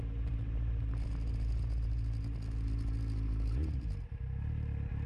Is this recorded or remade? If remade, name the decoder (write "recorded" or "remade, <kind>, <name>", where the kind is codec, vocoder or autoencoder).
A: recorded